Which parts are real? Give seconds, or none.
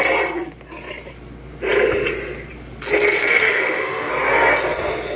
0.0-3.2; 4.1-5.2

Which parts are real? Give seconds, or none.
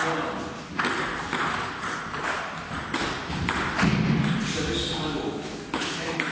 0.0-5.0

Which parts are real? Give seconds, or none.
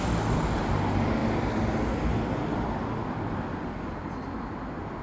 0.0-5.0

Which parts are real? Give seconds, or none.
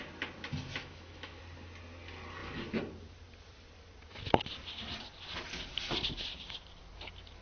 0.0-0.8; 1.4-7.4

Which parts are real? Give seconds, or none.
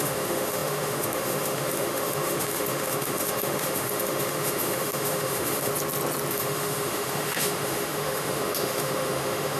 5.7-6.3